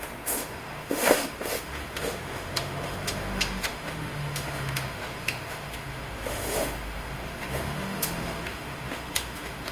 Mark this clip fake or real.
fake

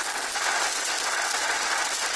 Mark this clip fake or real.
real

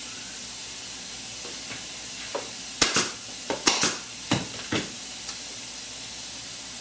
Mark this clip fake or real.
real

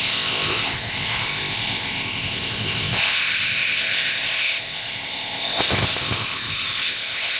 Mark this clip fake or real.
fake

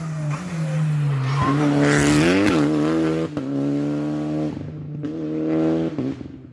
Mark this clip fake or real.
real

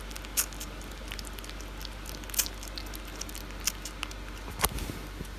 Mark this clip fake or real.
real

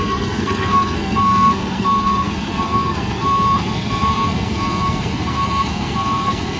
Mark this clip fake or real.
fake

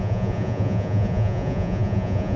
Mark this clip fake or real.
fake